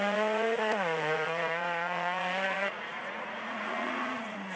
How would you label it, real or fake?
fake